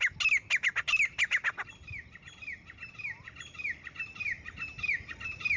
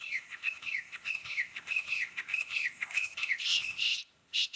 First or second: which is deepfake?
second